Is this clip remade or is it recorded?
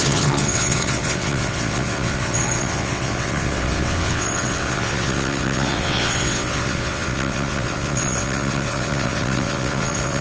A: remade